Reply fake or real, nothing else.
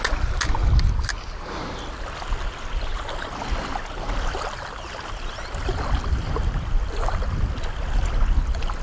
real